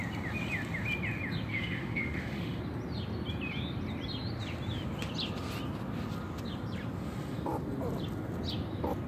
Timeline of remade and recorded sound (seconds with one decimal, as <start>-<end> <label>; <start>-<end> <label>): 0.0-1.5 recorded; 1.5-2.6 remade; 2.6-9.1 recorded